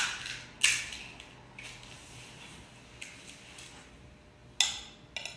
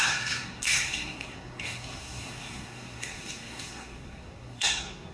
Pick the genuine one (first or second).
first